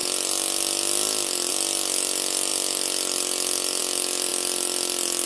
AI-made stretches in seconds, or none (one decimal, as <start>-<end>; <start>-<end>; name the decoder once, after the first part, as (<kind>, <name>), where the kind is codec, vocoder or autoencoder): none